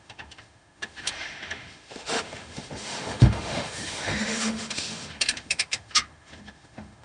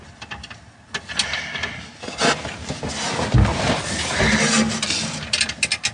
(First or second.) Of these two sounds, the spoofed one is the first